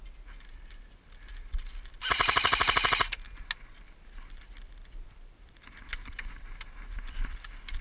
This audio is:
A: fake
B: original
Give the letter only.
B